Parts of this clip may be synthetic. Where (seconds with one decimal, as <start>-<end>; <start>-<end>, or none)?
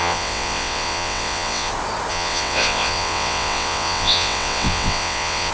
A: 0.0-1.7; 2.1-5.5